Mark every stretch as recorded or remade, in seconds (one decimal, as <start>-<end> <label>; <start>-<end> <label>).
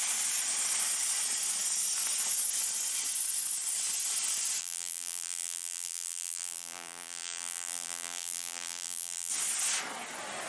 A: 0.0-4.6 recorded; 4.6-9.3 remade; 9.3-10.5 recorded